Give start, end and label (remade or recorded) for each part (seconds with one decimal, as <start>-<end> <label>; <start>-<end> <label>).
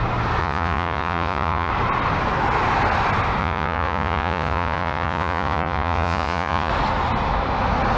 0.0-0.4 recorded; 0.4-1.7 remade; 1.7-3.4 recorded; 3.4-6.7 remade; 6.7-8.0 recorded